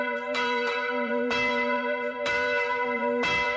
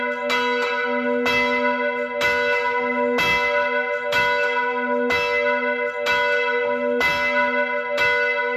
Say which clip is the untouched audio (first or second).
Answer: second